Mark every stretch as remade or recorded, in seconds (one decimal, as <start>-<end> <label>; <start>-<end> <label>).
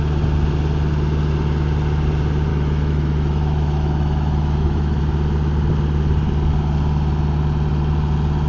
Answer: 0.0-2.5 recorded; 2.5-5.0 remade; 5.0-8.5 recorded